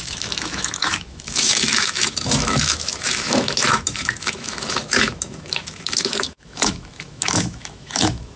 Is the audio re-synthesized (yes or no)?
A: yes